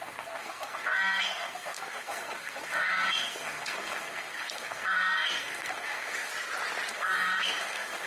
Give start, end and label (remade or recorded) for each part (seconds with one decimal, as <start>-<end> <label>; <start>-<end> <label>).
0.0-6.3 remade; 6.3-6.9 recorded; 6.9-8.1 remade